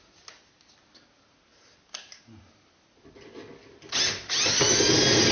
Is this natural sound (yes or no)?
yes